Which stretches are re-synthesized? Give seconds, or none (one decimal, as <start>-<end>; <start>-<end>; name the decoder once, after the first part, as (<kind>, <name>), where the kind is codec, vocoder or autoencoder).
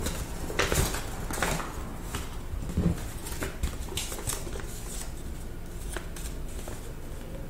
none